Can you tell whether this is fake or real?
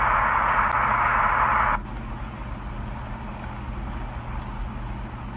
real